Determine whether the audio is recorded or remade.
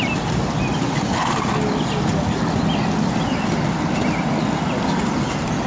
recorded